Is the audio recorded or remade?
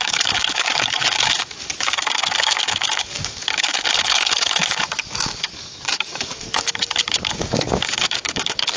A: remade